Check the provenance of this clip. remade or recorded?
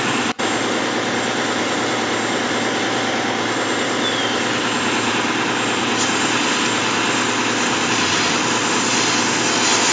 recorded